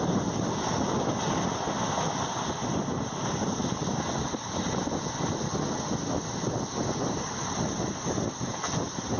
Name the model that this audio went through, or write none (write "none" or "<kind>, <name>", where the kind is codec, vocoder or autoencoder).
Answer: none